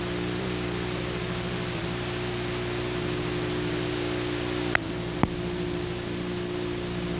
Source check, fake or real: real